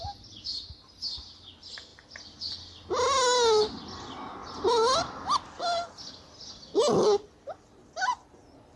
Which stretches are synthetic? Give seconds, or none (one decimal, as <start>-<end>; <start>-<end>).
none